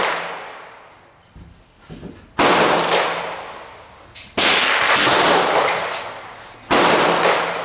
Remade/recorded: recorded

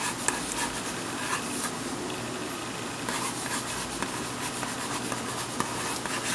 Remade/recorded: recorded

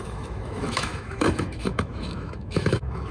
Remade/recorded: remade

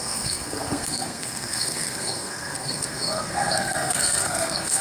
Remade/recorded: remade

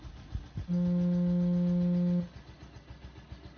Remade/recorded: recorded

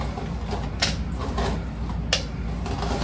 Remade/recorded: recorded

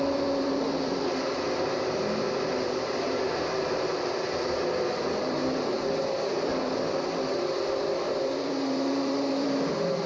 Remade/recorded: remade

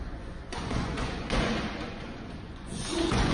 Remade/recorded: remade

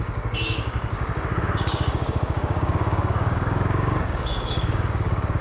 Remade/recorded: remade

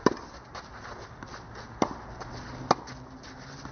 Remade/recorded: recorded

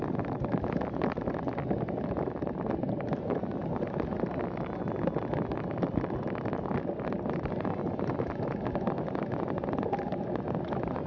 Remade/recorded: recorded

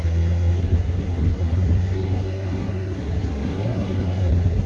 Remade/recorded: remade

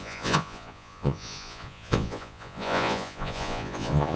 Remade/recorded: remade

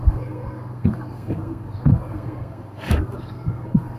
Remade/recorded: remade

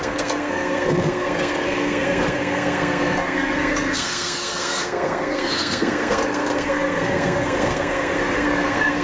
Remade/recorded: remade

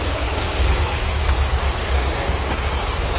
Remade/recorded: remade